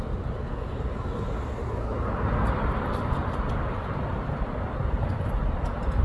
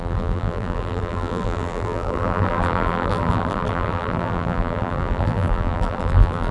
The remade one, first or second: second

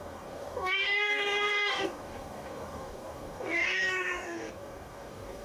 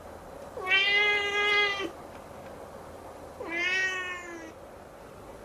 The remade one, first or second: first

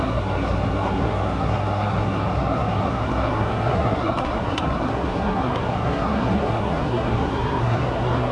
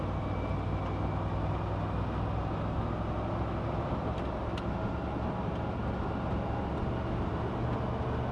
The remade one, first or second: first